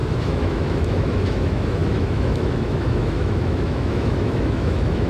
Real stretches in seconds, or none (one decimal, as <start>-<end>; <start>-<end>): none